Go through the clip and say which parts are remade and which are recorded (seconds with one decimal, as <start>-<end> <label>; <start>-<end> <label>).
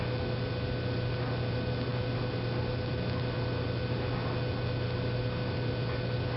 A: 0.0-6.4 recorded